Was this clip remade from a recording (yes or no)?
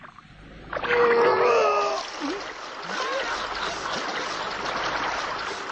no